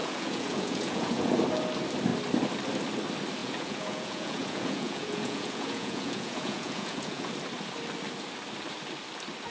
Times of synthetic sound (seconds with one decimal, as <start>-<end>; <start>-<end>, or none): 0.0-1.3; 3.4-7.3